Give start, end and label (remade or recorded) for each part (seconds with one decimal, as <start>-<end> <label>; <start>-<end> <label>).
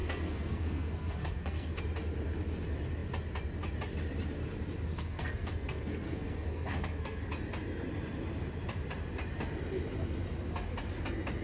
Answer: 0.0-1.8 remade; 1.8-4.9 recorded; 4.9-7.2 remade; 7.2-11.4 recorded